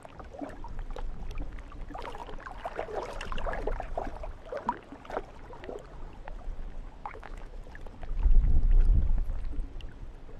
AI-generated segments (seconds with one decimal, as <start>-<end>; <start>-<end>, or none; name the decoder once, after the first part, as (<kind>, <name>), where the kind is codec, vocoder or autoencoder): 7.0-7.6 (autoencoder, DAC-VAE)